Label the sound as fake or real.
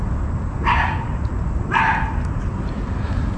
real